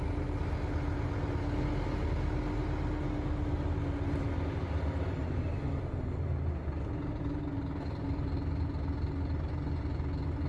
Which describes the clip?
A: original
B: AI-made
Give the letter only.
A